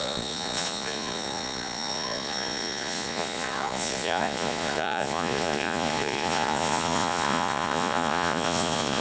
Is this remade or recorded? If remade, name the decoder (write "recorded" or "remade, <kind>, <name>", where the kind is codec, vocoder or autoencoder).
remade, vocoder, Vocos